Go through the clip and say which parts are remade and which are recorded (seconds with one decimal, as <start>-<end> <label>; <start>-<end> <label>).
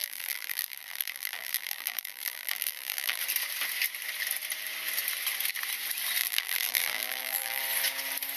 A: 0.0-3.2 remade; 3.2-6.2 recorded; 6.2-7.6 remade; 7.6-8.4 recorded